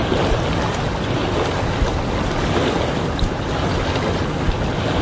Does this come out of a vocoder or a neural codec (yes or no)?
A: no